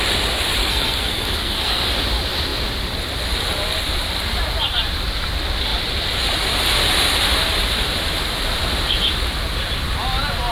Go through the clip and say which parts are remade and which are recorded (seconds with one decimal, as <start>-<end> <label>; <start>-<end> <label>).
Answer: 0.0-0.6 recorded; 0.6-1.9 remade; 1.9-10.5 recorded